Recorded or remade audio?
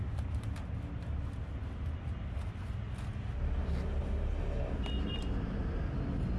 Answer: recorded